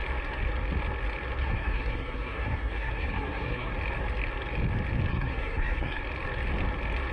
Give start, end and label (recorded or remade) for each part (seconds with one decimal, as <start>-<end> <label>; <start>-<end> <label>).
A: 0.0-1.4 recorded; 1.4-3.7 remade; 3.7-5.1 recorded; 5.1-6.0 remade; 6.0-7.1 recorded